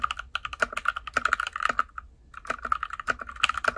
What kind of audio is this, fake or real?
real